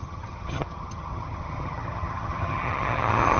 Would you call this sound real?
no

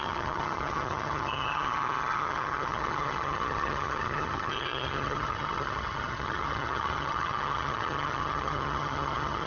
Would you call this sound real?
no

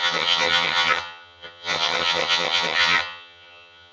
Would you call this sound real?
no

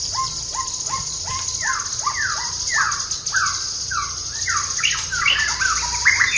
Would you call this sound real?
yes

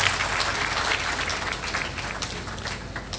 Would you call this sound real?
yes